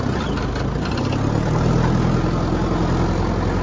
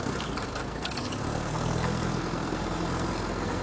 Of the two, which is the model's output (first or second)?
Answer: second